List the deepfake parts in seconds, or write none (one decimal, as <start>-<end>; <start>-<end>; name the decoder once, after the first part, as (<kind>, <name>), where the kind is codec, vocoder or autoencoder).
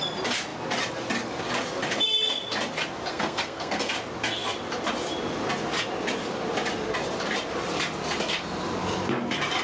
3.1-3.9 (codec, SNAC)